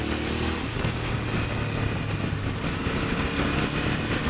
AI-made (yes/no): no